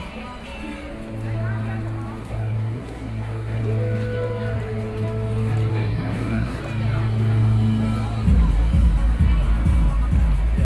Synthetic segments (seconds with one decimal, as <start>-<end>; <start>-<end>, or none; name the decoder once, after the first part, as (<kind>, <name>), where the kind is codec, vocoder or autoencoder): 2.2-3.6 (codec, SNAC); 5.7-6.6